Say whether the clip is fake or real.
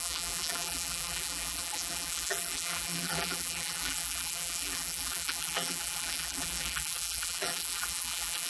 fake